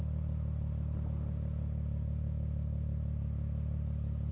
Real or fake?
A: real